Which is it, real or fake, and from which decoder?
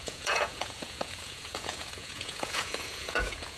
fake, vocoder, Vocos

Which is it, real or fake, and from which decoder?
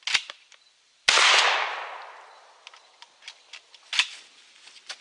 real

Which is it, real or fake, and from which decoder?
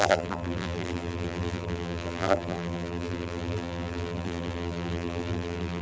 fake, vocoder, BigVGAN v2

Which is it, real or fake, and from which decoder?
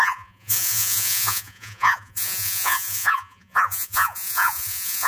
fake, vocoder, Vocos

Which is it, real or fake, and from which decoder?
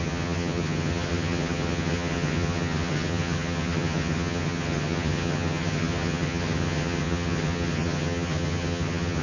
fake, vocoder, HiFi-GAN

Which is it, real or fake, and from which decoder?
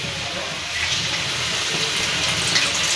real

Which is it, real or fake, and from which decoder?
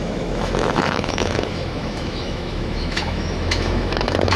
fake, autoencoder, DAC-VAE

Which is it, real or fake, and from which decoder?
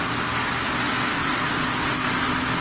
real